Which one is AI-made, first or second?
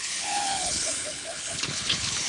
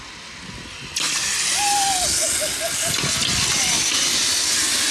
first